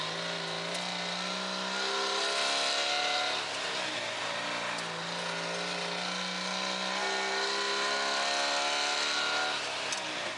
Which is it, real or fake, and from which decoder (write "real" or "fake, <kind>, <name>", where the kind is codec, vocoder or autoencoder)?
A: real